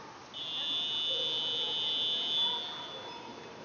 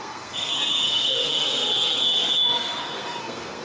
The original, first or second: first